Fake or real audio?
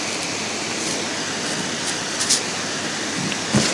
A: real